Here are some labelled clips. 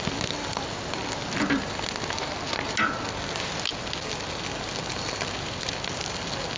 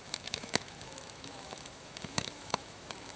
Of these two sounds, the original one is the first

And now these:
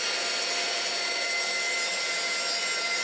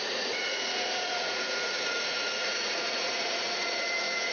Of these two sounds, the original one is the first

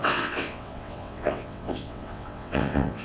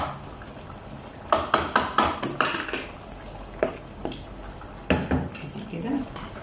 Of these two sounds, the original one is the second